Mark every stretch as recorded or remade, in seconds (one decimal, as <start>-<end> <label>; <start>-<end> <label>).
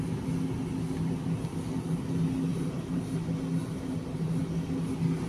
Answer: 0.0-2.5 recorded; 2.5-3.0 remade; 3.0-3.6 recorded; 3.6-4.4 remade; 4.4-5.3 recorded